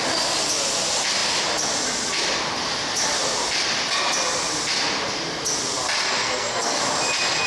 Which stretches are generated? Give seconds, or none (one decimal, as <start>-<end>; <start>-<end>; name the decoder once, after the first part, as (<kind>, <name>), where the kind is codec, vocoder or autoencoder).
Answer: 6.2-6.8 (codec, SNAC)